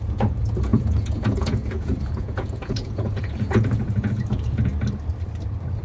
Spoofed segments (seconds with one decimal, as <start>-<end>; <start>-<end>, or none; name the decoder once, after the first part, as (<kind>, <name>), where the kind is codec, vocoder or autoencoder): 0.0-4.7 (vocoder, Vocos)